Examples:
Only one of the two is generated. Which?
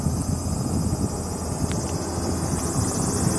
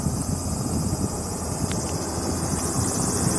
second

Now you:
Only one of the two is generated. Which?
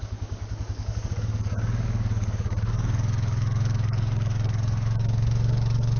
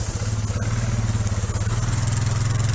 first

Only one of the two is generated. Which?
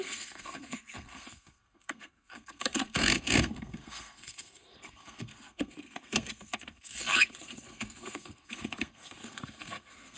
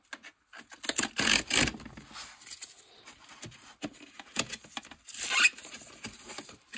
first